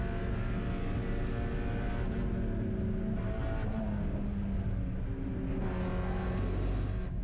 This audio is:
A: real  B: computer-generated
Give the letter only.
A